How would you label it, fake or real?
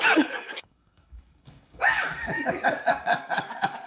fake